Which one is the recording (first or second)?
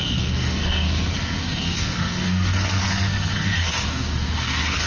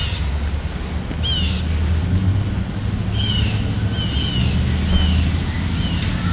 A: second